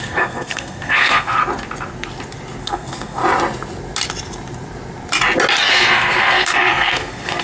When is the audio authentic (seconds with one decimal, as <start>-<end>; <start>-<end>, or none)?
1.4-2.6; 3.2-5.7